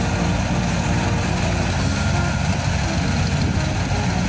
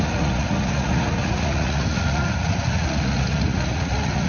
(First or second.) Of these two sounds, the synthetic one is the second